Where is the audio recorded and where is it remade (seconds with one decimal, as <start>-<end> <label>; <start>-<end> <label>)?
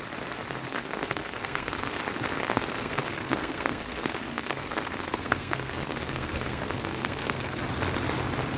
0.0-0.7 recorded; 0.7-2.0 remade; 2.0-2.4 recorded; 2.4-7.6 remade; 7.6-8.6 recorded